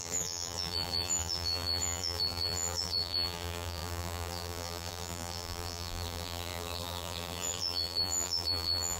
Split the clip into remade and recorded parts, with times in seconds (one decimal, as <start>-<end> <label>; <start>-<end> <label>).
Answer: 0.0-9.0 remade